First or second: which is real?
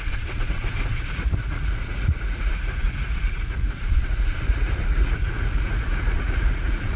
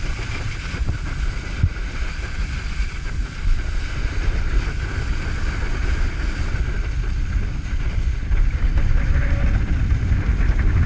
second